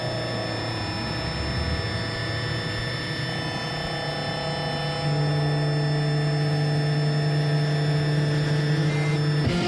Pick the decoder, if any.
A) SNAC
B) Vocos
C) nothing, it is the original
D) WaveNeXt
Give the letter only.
C